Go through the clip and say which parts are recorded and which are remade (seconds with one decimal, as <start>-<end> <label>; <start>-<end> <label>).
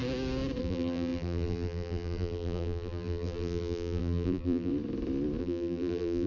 0.0-0.6 recorded; 0.6-4.7 remade; 4.7-5.4 recorded; 5.4-6.3 remade